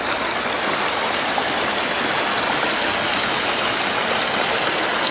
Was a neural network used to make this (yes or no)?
no